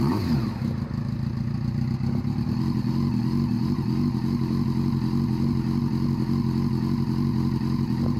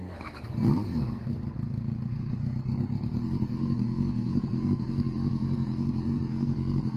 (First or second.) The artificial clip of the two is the second